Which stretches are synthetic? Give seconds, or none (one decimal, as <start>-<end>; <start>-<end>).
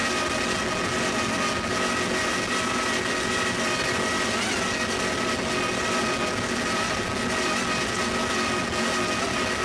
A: none